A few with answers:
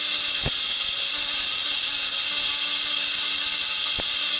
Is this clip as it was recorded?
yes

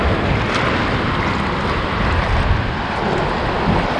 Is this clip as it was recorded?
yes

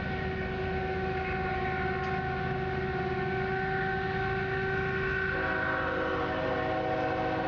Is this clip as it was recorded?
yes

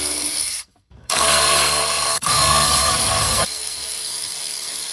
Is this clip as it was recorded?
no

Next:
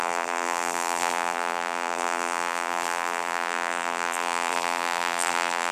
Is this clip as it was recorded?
no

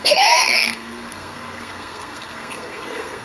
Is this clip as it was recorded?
no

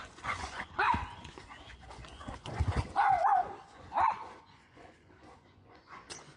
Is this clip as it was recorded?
no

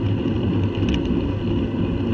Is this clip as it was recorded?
yes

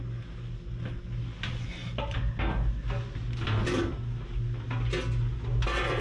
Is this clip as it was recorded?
yes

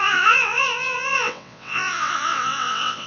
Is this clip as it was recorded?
no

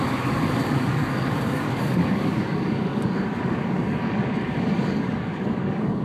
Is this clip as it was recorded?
no